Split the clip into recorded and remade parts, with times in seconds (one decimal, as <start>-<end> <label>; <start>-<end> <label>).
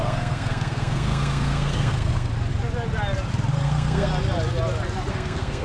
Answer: 0.0-2.3 remade; 2.3-3.5 recorded; 3.5-4.1 remade; 4.1-5.1 recorded; 5.1-5.6 remade